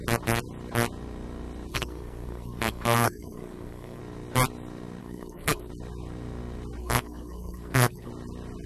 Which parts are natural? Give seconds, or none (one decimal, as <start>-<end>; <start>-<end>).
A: 0.0-1.7; 4.0-5.0; 5.7-6.8; 8.1-8.7